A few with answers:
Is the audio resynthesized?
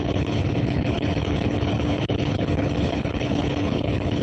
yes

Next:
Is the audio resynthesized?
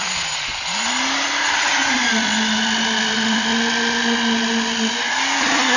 no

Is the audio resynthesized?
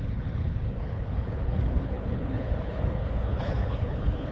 yes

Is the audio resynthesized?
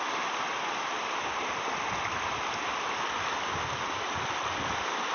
no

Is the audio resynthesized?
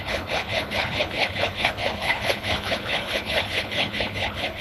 yes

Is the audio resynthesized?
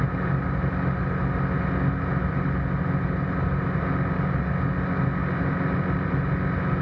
no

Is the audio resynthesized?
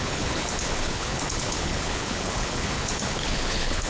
yes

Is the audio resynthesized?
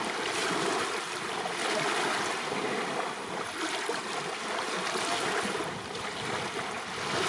no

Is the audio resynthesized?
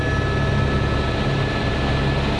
no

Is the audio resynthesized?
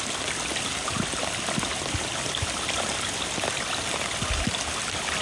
no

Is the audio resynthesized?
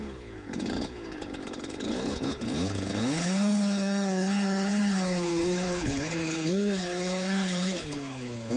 yes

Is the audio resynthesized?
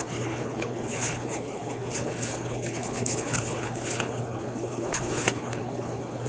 yes